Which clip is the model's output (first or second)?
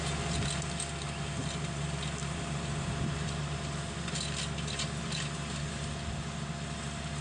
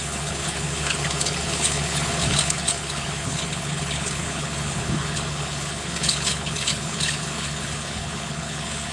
second